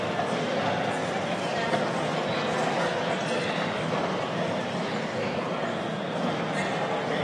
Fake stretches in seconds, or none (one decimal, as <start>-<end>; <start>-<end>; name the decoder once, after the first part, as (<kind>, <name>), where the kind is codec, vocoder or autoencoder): none